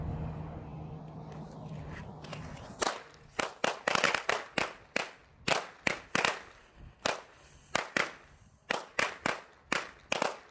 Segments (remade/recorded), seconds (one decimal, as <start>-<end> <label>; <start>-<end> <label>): 0.0-10.5 recorded